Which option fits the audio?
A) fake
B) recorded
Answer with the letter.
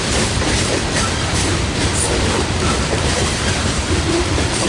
A